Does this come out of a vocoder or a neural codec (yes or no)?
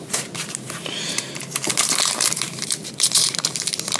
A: yes